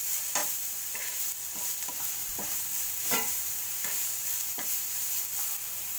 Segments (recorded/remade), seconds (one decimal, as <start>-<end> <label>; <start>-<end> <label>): 0.0-0.4 recorded; 0.4-1.2 remade; 1.2-2.2 recorded; 2.2-5.1 remade; 5.1-6.0 recorded